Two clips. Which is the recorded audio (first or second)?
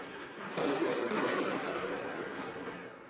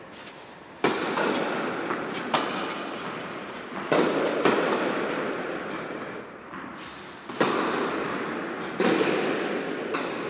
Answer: second